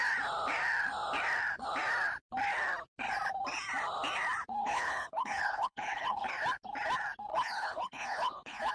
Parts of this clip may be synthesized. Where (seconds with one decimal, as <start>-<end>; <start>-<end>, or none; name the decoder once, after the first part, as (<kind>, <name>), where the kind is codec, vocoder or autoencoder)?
4.6-6.3 (codec, HILCodec); 7.3-8.7